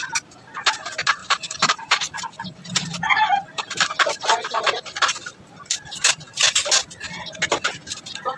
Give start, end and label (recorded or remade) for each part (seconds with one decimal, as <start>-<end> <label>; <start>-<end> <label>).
0.0-1.2 recorded; 1.2-3.9 remade; 3.9-8.4 recorded

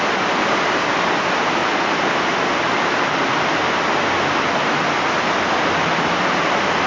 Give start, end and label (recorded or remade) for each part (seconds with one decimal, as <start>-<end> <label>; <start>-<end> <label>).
0.0-0.4 recorded; 0.4-1.1 remade; 1.1-6.9 recorded